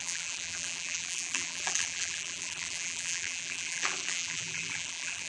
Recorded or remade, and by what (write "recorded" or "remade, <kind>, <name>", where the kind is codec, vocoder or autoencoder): remade, vocoder, BigVGAN v2